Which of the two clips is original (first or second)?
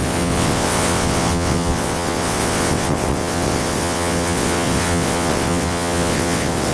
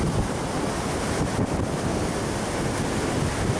second